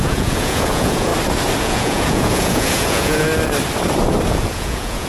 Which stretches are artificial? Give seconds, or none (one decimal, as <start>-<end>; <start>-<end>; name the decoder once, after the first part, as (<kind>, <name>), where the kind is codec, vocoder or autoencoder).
0.0-1.1 (vocoder, Vocos); 1.6-3.3; 4.3-5.1